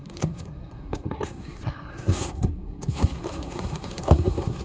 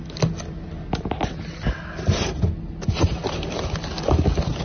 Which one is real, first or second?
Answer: second